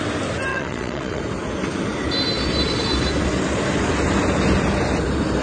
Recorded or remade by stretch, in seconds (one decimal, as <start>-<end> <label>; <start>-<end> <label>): 0.0-0.5 recorded; 0.5-1.2 remade; 1.2-5.4 recorded